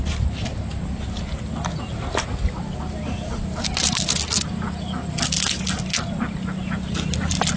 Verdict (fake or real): real